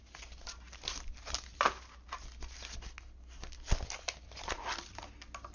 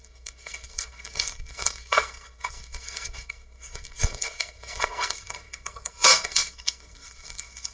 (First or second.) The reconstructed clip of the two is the second